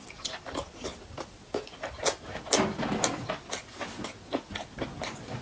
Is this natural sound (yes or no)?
yes